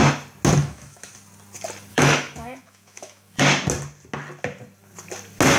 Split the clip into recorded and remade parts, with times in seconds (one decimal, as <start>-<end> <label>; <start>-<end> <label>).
0.0-0.6 recorded; 0.6-1.1 remade; 1.1-1.9 recorded; 1.9-3.4 remade; 3.4-5.6 recorded